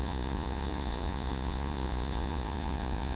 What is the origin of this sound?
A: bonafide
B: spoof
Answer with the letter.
B